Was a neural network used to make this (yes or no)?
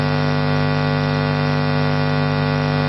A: no